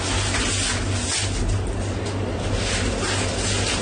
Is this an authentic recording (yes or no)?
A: yes